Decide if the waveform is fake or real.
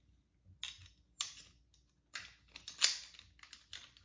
real